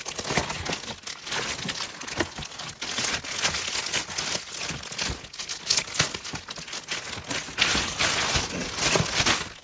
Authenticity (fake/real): real